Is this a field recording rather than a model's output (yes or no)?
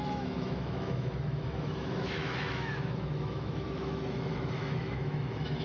no